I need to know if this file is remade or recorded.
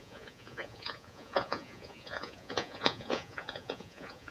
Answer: remade